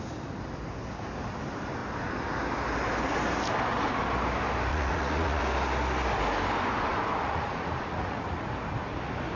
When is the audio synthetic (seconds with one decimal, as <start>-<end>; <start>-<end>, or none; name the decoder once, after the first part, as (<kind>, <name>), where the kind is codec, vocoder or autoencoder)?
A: 4.7-5.4 (vocoder, Vocos); 7.2-8.4